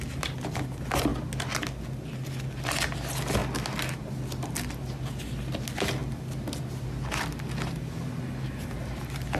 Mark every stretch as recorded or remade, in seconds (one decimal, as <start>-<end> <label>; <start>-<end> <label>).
0.0-9.4 recorded